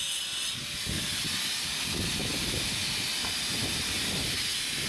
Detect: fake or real real